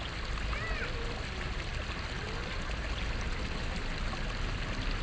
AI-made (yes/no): no